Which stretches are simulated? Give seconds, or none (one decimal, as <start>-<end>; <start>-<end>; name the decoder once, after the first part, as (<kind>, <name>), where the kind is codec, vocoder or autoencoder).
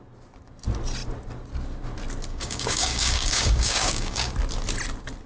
2.3-4.3 (codec, DAC)